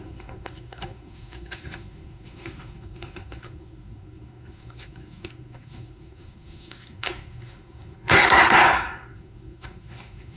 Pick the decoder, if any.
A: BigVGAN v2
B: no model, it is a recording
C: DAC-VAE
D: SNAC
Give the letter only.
D